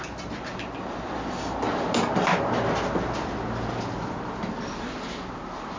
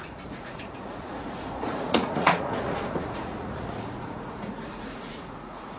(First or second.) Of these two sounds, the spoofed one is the second